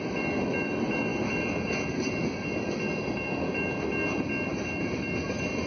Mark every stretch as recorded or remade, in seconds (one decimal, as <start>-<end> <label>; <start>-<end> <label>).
0.0-5.7 recorded